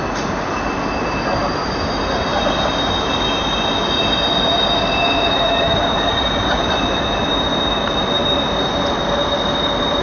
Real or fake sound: real